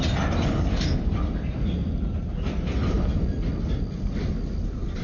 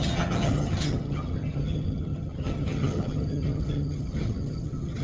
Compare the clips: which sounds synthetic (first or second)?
second